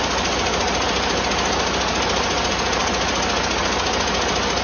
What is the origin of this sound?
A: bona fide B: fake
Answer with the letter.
A